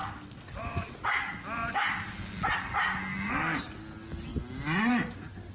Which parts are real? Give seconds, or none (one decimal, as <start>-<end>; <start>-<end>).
0.0-5.5